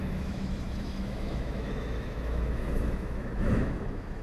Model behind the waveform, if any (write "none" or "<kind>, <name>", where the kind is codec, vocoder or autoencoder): autoencoder, DAC-VAE